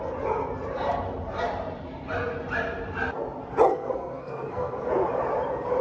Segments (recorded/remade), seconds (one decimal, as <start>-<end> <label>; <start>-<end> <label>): 0.0-3.7 recorded; 3.7-4.9 remade; 4.9-5.8 recorded